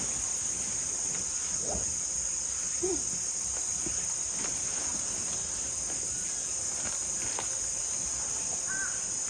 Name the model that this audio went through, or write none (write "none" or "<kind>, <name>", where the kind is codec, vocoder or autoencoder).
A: none